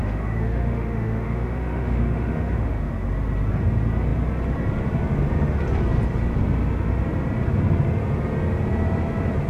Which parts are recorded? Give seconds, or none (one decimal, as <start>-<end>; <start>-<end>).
2.9-9.5